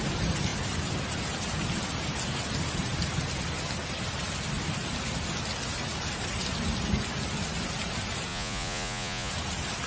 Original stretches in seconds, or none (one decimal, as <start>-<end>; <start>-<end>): 0.0-8.3; 9.3-9.9